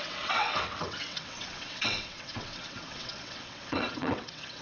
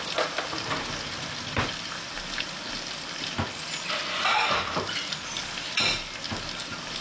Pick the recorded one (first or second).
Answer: second